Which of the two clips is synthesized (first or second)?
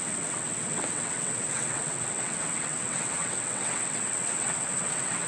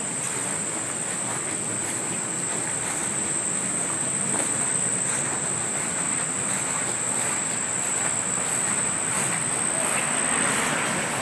first